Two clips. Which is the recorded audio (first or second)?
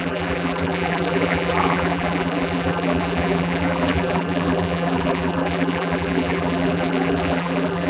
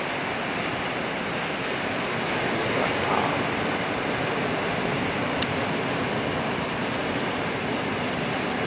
second